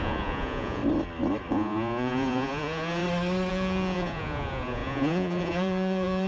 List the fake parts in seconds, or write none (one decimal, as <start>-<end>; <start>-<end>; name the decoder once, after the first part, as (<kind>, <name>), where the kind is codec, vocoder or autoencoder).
0.0-0.8 (vocoder, Vocos); 1.5-3.0; 3.5-6.3